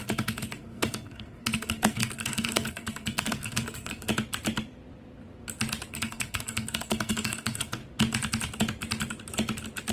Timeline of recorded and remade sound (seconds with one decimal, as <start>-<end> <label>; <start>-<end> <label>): 0.0-4.1 remade; 4.1-5.9 recorded; 5.9-7.8 remade; 7.8-9.9 recorded